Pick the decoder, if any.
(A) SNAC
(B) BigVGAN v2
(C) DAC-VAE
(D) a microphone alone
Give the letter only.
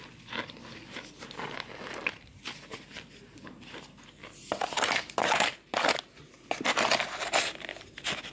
D